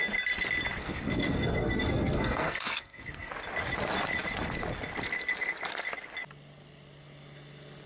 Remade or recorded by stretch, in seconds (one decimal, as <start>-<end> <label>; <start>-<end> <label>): 0.0-0.8 recorded; 0.8-3.3 remade; 3.3-7.9 recorded